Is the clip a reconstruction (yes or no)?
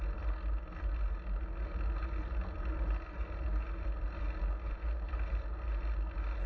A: no